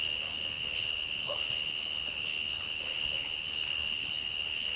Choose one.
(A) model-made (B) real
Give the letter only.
A